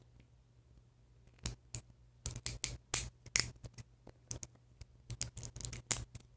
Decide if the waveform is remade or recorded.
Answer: recorded